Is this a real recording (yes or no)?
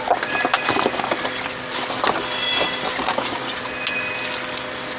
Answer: yes